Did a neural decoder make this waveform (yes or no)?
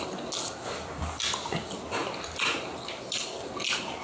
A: no